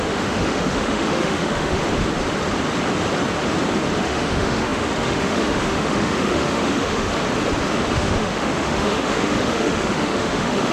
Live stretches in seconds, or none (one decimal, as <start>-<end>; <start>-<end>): 1.8-4.0; 7.1-7.9